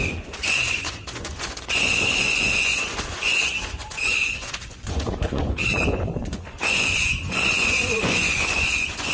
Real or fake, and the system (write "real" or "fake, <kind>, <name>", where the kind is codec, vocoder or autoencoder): fake, vocoder, Vocos